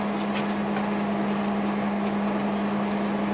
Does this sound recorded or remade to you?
recorded